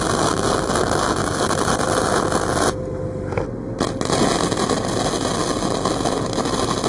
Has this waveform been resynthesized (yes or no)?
no